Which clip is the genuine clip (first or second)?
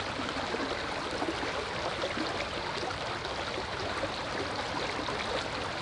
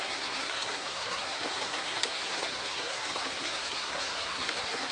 first